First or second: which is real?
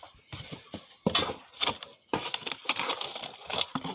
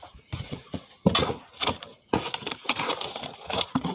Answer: first